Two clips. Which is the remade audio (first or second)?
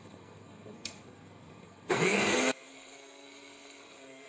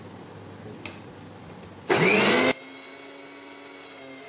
first